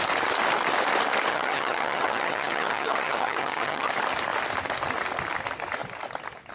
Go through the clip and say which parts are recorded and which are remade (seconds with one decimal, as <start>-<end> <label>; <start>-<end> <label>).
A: 0.0-1.3 recorded; 1.3-3.9 remade; 3.9-6.5 recorded